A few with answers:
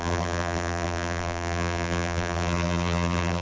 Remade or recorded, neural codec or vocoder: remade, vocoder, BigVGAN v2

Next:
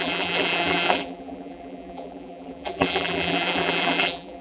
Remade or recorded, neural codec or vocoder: remade, vocoder, BigVGAN v2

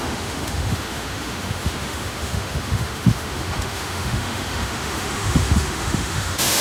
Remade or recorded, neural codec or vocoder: remade, autoencoder, DAC-VAE